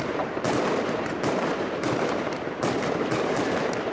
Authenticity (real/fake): fake